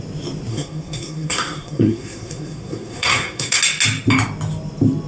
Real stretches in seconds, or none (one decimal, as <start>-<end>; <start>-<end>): 0.0-0.5; 3.6-5.1